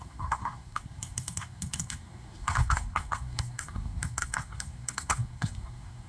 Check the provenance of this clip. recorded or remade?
remade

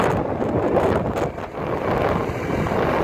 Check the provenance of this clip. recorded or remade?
recorded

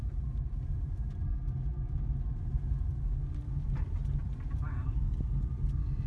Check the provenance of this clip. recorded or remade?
recorded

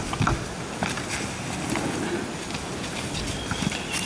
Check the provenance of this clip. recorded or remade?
recorded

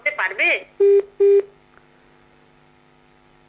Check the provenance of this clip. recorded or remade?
recorded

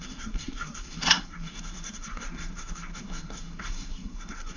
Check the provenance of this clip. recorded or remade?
remade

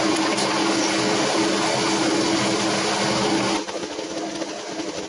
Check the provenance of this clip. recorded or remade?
recorded